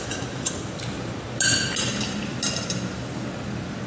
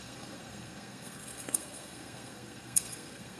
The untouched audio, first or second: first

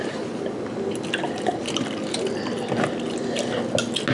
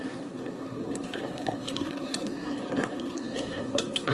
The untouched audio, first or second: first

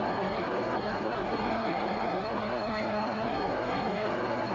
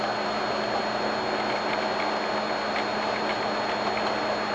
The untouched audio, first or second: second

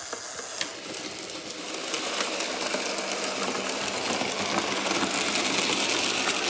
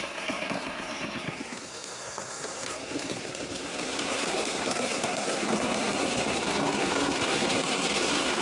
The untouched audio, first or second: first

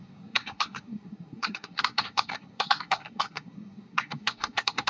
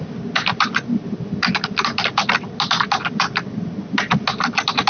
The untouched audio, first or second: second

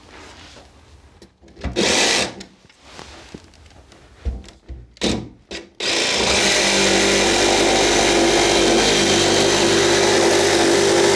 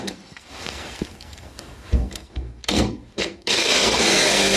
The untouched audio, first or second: first